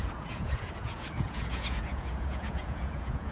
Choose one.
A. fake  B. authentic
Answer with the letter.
A